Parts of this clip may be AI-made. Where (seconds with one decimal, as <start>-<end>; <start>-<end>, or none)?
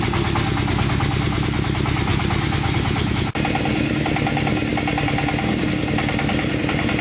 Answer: none